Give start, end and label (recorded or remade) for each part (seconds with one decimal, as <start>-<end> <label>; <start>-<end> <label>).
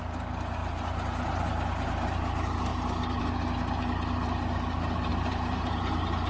0.0-0.6 recorded; 0.6-2.2 remade; 2.2-5.1 recorded; 5.1-6.3 remade